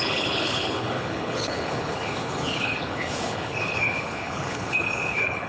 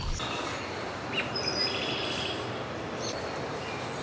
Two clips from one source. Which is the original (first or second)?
second